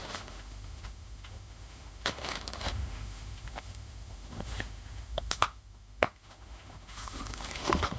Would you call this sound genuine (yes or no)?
no